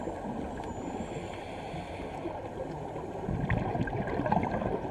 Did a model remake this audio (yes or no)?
no